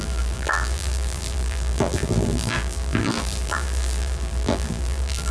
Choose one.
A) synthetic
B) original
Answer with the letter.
A